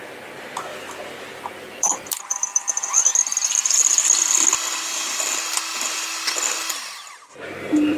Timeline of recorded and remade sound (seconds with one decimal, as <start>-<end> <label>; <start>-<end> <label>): 0.0-8.0 recorded